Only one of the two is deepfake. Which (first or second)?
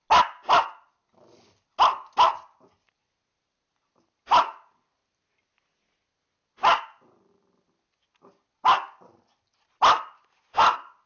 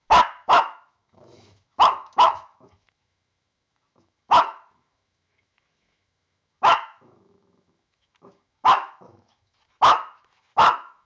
second